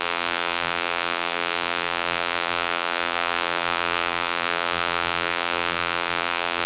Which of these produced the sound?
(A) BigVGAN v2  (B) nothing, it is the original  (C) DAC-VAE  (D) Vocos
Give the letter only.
A